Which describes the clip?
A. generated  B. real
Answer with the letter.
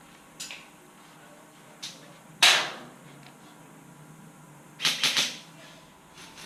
B